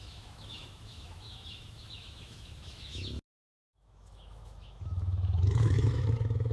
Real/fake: fake